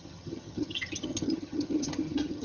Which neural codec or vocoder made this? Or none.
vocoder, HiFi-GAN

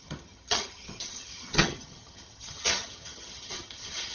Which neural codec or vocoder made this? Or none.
vocoder, HiFi-GAN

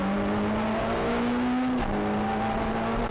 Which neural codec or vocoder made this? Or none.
none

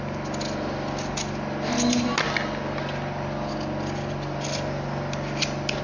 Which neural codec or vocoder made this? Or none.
none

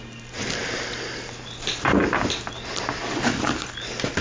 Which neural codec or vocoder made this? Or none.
none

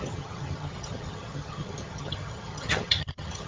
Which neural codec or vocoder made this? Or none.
vocoder, HiFi-GAN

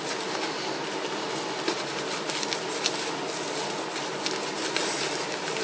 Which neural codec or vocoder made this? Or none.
none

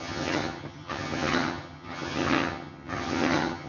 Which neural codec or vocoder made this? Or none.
vocoder, HiFi-GAN